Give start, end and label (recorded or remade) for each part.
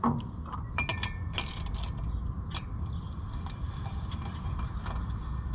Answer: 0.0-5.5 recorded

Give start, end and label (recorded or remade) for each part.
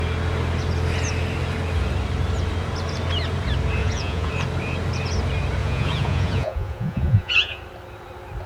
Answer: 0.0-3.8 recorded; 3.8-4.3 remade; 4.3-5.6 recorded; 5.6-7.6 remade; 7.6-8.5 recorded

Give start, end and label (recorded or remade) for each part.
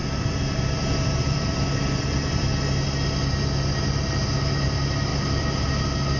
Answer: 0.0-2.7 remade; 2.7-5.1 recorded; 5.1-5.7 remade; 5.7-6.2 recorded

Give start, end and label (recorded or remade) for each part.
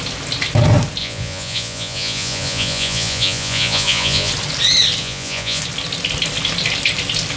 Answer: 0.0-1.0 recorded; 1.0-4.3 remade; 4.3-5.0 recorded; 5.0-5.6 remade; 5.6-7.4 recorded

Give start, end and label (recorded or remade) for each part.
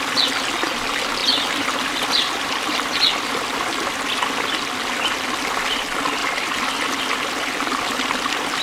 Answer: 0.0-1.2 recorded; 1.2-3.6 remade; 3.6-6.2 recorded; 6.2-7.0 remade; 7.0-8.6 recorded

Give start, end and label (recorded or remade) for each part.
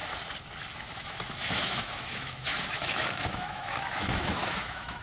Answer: 0.0-0.9 recorded; 0.9-5.0 remade